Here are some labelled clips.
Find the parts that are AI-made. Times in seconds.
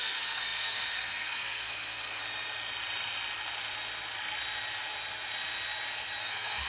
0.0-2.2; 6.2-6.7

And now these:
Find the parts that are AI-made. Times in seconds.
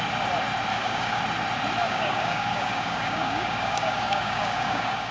0.7-1.2; 1.8-5.1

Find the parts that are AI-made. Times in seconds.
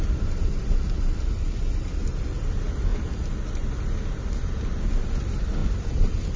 none